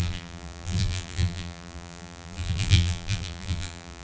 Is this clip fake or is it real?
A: fake